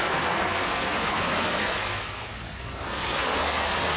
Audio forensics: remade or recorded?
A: remade